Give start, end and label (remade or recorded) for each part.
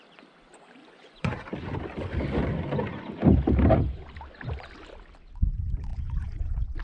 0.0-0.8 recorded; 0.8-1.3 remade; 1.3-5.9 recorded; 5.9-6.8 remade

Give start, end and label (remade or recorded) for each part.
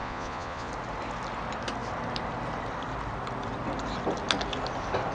0.0-0.7 remade; 0.7-5.1 recorded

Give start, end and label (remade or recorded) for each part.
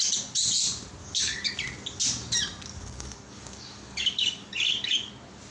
0.0-1.0 recorded; 1.0-1.5 remade; 1.5-2.7 recorded; 2.7-5.1 remade; 5.1-5.5 recorded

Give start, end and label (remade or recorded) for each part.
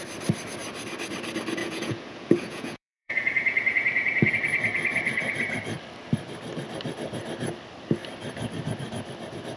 0.0-1.6 recorded; 1.6-4.3 remade; 4.3-9.6 recorded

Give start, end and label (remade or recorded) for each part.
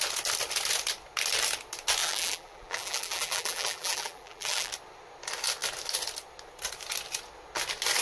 0.0-2.0 recorded; 2.0-4.7 remade; 4.7-8.0 recorded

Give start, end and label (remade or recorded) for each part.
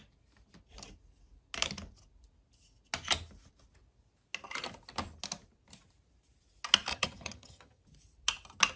0.0-6.9 recorded; 6.9-7.8 remade; 7.8-8.8 recorded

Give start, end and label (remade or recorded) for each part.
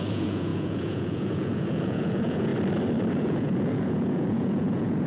0.0-2.5 remade; 2.5-3.1 recorded; 3.1-5.1 remade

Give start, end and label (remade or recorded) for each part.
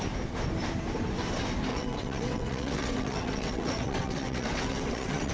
0.0-1.7 recorded; 1.7-5.3 remade